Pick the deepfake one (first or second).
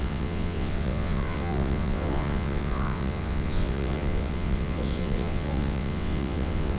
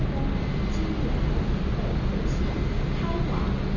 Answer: first